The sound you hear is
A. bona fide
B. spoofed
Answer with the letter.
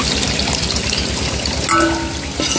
A